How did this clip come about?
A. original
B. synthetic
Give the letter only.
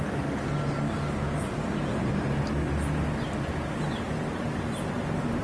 A